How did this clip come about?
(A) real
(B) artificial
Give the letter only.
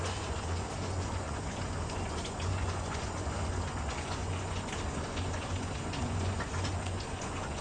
B